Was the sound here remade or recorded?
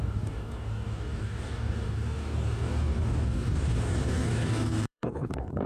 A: remade